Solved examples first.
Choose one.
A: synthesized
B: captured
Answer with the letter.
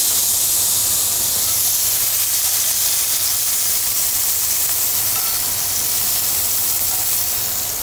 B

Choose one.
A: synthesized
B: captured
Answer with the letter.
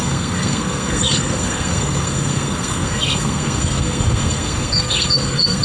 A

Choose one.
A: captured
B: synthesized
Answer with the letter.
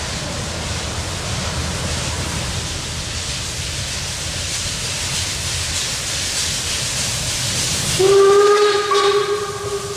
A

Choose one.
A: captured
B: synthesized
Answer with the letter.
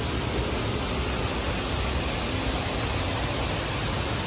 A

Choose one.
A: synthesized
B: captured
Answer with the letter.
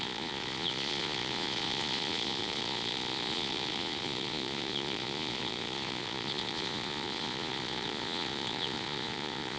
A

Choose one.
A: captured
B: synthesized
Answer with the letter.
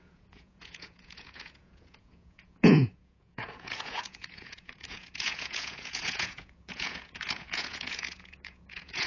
B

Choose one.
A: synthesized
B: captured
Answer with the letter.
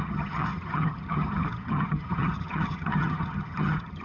A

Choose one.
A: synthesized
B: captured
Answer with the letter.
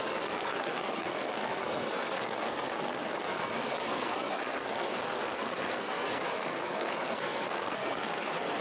A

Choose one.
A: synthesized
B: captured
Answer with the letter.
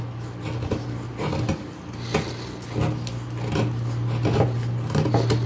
B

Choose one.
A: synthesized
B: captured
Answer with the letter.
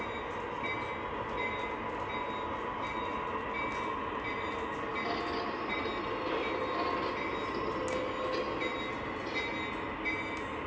B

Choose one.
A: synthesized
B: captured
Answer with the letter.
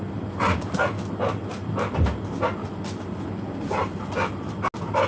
B